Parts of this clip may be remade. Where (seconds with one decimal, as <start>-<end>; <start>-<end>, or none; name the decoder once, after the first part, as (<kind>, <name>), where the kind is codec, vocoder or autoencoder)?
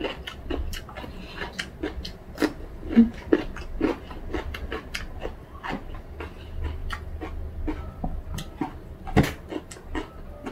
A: none